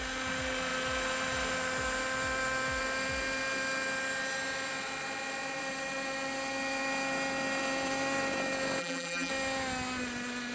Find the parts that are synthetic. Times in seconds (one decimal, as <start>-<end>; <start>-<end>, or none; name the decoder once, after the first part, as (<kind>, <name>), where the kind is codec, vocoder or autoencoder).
8.8-9.3 (vocoder, BigVGAN v2)